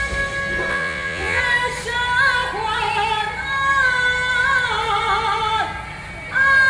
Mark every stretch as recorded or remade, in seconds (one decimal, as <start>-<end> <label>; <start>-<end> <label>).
0.0-0.7 recorded; 0.7-1.4 remade; 1.4-6.7 recorded